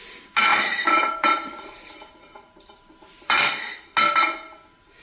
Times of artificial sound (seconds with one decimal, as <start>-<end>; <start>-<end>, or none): 0.5-3.5